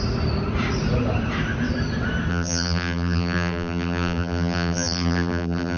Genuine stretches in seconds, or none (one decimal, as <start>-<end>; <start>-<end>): 0.0-2.3